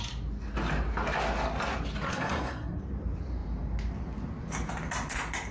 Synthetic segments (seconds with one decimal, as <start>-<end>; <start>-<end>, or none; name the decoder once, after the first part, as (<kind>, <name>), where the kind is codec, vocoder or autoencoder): 2.1-2.8 (codec, SNAC)